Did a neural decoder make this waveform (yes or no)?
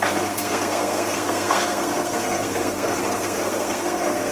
yes